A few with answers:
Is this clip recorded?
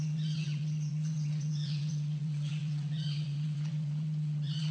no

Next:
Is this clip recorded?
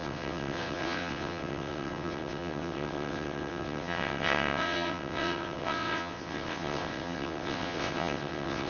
no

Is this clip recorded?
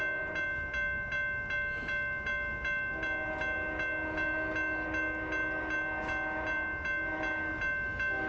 yes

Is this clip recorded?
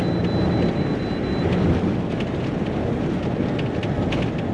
yes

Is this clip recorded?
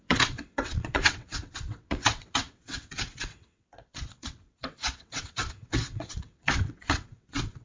no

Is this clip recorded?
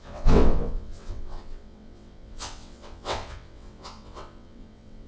no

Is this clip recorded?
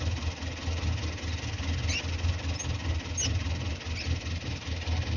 yes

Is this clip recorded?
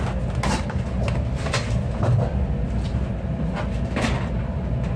yes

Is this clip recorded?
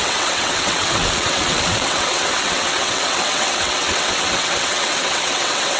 no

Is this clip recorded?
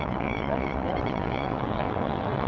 no